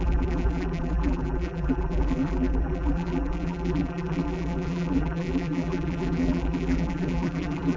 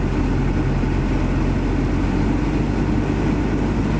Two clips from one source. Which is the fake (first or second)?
first